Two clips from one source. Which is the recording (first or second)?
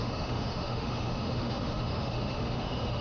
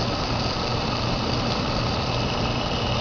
second